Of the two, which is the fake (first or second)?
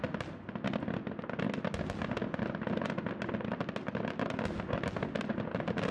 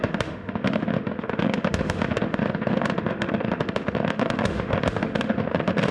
second